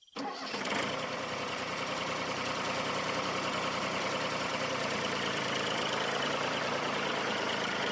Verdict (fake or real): fake